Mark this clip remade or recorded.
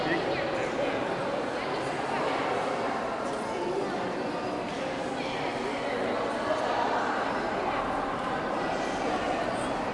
recorded